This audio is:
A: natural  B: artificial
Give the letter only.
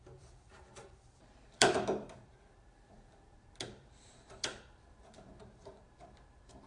B